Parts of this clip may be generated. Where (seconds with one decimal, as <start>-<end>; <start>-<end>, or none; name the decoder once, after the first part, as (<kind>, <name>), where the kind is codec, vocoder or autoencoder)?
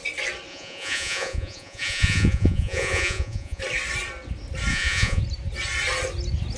0.5-3.6 (vocoder, Vocos); 4.7-5.2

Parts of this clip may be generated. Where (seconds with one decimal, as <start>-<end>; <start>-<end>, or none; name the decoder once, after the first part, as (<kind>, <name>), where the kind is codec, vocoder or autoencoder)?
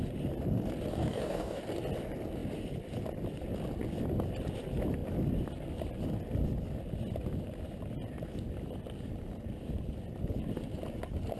0.9-1.6 (codec, DAC)